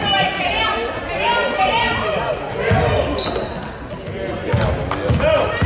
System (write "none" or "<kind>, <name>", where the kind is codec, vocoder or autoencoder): none